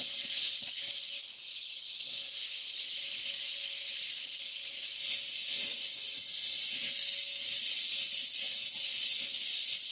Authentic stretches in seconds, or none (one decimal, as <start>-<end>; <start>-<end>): 0.0-9.9